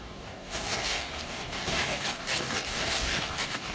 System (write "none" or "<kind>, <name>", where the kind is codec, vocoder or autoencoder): codec, DAC